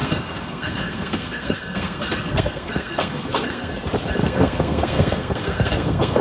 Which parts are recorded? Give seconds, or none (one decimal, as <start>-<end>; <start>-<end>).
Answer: 3.7-4.2